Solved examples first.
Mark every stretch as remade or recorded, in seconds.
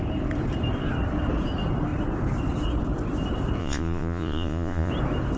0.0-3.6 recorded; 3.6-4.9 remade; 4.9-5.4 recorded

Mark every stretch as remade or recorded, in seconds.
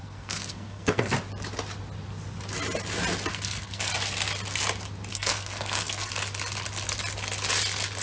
0.0-1.1 remade; 1.1-3.3 recorded; 3.3-3.9 remade; 3.9-5.1 recorded; 5.1-6.1 remade; 6.1-8.0 recorded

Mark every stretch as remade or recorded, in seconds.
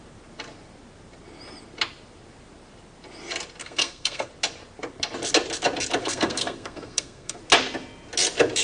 0.0-3.6 recorded; 3.6-4.3 remade; 4.3-6.0 recorded; 6.0-7.4 remade; 7.4-8.6 recorded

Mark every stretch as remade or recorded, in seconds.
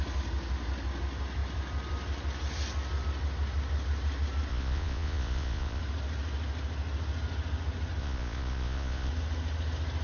0.0-4.5 recorded; 4.5-5.8 remade; 5.8-8.0 recorded; 8.0-9.1 remade; 9.1-10.0 recorded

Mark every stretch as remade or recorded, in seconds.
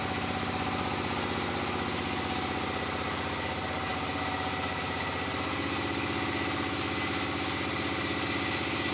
0.0-8.9 recorded